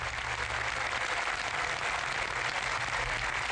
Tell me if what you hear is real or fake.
real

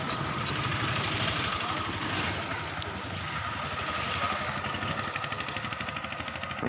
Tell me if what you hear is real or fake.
real